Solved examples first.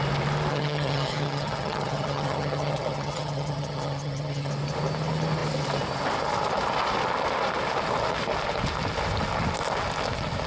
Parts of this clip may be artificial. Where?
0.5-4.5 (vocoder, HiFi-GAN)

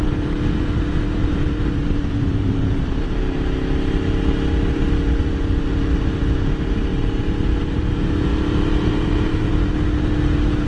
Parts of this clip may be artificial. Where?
1.2-3.2 (vocoder, BigVGAN v2); 6.9-7.9; 8.3-9.7

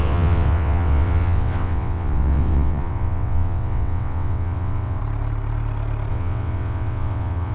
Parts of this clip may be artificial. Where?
0.0-5.0 (vocoder, WaveNeXt); 6.1-7.5